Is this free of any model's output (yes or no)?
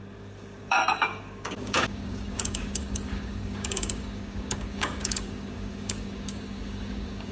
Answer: no